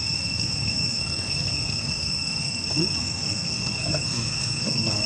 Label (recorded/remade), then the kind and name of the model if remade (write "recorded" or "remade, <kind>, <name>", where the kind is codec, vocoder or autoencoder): remade, codec, SNAC